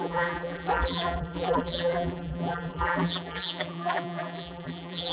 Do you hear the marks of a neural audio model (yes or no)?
yes